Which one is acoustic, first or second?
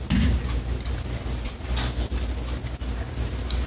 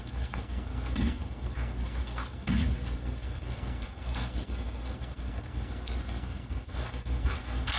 first